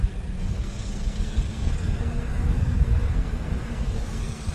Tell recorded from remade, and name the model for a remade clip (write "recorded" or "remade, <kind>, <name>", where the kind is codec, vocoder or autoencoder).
remade, codec, SNAC